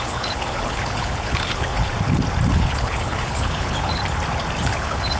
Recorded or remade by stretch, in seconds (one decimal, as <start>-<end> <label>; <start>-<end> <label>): 0.0-1.9 remade; 1.9-2.5 recorded; 2.5-4.0 remade; 4.0-4.6 recorded; 4.6-5.2 remade